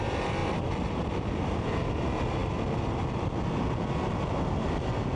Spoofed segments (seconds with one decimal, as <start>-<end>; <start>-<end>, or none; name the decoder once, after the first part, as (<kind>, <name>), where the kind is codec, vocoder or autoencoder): none